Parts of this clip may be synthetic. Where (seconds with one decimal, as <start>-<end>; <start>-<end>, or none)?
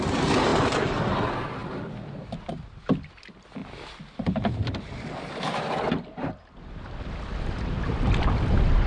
none